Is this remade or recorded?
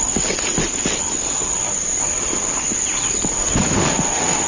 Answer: recorded